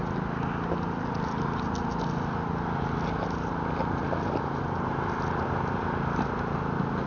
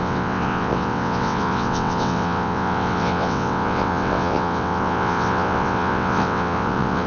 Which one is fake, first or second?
second